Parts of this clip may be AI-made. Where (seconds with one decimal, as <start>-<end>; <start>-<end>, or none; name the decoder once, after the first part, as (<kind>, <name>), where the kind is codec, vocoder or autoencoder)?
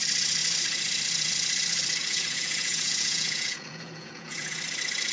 2.0-4.6 (vocoder, Vocos)